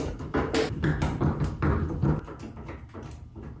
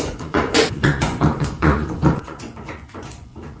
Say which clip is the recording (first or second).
first